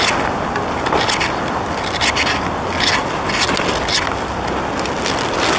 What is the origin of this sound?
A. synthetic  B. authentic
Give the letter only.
B